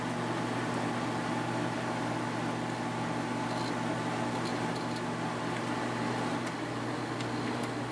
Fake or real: real